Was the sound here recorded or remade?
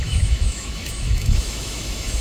remade